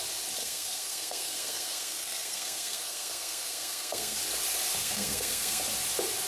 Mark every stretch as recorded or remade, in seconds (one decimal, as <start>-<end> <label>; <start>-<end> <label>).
0.0-0.4 recorded; 0.4-4.2 remade; 4.2-4.8 recorded; 4.8-5.6 remade; 5.6-6.3 recorded